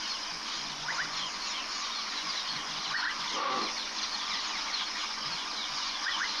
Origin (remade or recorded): remade